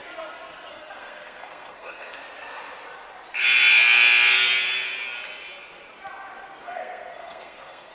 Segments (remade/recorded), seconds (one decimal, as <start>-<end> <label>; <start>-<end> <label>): 0.0-0.7 recorded; 0.7-2.2 remade; 2.2-6.6 recorded; 6.6-7.9 remade

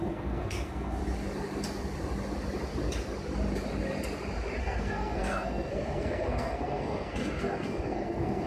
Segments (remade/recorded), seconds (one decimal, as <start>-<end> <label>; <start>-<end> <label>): 0.0-1.0 remade; 1.0-4.6 recorded; 4.6-8.5 remade

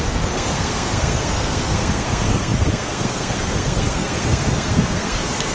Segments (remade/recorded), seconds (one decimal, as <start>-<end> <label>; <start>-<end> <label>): 0.0-5.5 remade

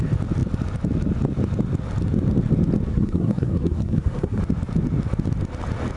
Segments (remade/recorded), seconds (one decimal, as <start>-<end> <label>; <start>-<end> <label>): 0.0-2.9 recorded; 2.9-4.4 remade; 4.4-6.0 recorded

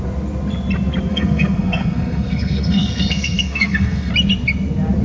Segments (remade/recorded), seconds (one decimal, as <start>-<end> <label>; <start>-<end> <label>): 0.0-1.1 recorded; 1.1-4.1 remade; 4.1-5.0 recorded

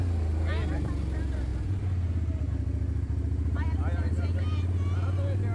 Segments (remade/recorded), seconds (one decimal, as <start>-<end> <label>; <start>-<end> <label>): 0.0-5.5 recorded